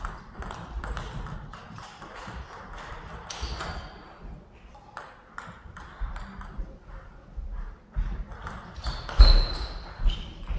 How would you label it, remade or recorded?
recorded